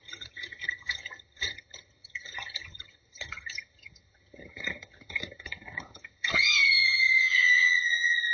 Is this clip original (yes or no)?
no